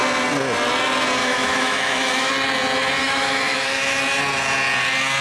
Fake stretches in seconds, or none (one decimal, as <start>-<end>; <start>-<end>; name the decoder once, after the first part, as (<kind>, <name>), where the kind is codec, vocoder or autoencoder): 1.2-2.3 (autoencoder, DAC-VAE); 3.0-4.0